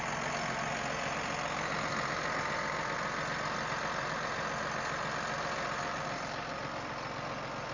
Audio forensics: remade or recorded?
recorded